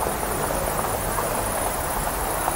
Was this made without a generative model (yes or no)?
yes